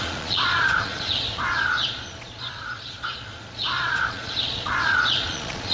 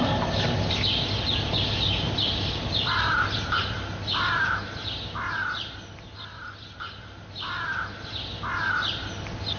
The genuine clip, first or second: second